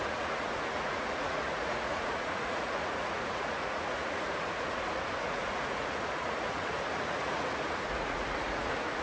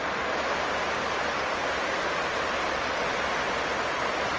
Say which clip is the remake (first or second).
first